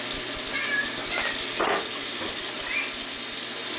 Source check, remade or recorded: recorded